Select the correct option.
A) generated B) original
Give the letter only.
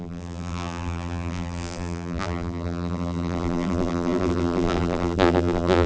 A